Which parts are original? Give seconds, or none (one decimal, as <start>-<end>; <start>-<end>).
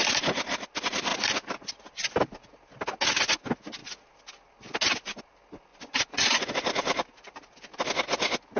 0.0-5.7; 6.5-8.6